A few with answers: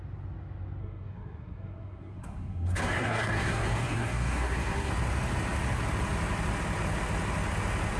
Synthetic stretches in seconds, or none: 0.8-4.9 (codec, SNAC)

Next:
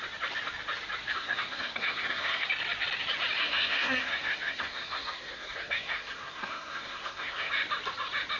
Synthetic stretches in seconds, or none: 1.1-2.5 (codec, SNAC); 3.4-7.5

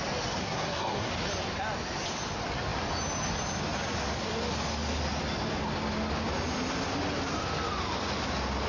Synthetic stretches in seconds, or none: 0.4-1.1 (codec, SNAC)

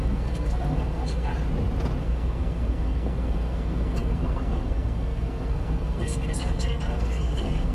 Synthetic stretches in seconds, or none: 0.0-1.3 (codec, SNAC); 2.0-7.7

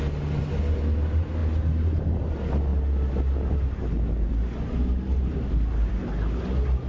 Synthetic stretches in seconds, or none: none